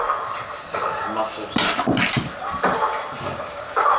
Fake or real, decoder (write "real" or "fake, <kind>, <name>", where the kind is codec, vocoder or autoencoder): real